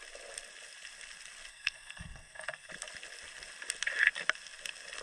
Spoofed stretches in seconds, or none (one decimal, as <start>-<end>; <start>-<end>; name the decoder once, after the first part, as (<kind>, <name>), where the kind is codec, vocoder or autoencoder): 1.5-2.7 (codec, SNAC)